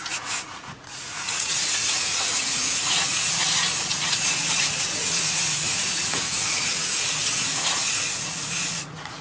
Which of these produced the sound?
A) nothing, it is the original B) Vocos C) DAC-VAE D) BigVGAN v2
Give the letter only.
B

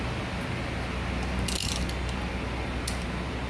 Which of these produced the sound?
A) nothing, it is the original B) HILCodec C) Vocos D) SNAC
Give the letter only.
A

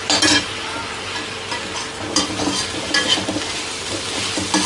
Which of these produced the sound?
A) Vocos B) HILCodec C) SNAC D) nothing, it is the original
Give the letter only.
D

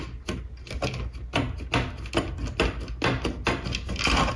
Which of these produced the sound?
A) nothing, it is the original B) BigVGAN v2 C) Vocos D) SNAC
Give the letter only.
A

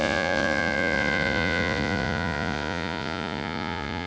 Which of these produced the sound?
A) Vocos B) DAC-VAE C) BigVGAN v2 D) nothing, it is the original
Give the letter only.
A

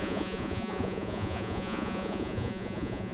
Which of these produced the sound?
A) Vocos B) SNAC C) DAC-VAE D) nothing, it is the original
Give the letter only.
A